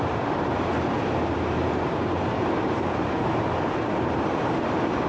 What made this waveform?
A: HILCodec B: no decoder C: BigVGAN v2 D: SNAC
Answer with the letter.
C